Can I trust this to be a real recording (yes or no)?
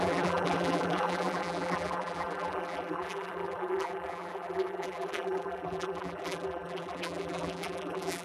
no